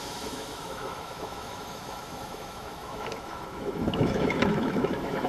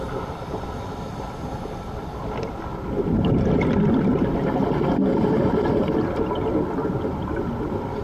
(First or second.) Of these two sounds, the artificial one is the first